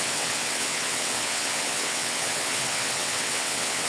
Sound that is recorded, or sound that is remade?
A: remade